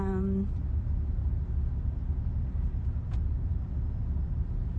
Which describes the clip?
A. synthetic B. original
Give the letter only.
B